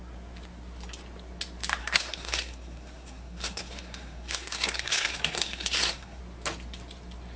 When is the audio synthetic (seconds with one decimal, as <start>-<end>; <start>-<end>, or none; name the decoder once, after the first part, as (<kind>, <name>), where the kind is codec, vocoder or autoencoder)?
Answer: 1.8-6.2 (codec, SNAC)